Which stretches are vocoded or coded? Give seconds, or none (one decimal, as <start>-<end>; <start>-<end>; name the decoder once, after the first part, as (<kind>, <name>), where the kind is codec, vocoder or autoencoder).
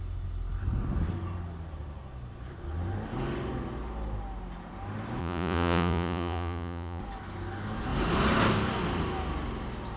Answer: 5.2-7.0 (vocoder, Vocos)